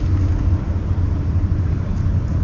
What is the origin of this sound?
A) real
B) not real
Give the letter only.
A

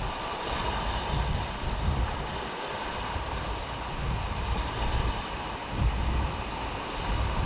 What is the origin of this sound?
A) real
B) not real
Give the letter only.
A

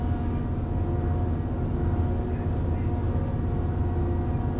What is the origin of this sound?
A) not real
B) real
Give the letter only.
B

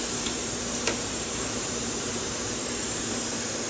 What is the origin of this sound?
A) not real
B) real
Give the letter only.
A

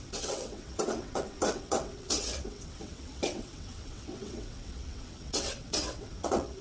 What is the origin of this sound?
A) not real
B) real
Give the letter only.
A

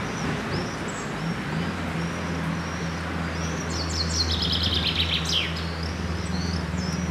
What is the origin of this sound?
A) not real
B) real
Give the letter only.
B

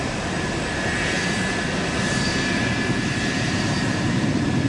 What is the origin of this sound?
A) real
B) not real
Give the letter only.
B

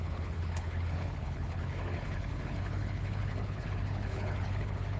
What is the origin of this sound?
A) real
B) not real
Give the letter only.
B